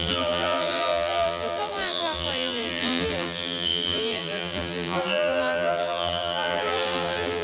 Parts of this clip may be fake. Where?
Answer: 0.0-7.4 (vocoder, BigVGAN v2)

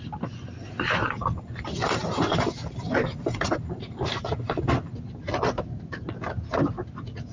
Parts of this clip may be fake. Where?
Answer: 0.6-4.9 (vocoder, BigVGAN v2)

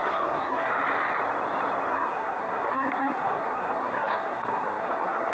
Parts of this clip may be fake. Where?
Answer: 0.0-0.7 (codec, SNAC); 1.9-5.3

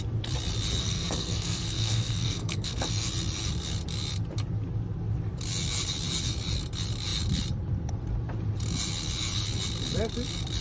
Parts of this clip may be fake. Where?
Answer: 0.8-2.9 (codec, SNAC)